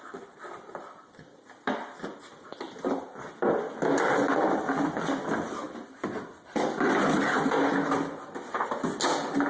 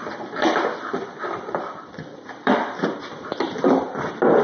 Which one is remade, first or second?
second